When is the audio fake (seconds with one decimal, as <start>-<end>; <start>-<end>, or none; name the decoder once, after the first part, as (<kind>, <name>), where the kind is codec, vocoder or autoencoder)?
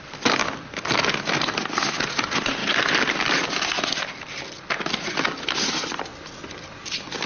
2.6-7.3 (vocoder, BigVGAN v2)